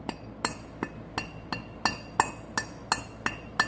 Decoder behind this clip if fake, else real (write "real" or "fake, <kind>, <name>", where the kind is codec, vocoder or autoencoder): real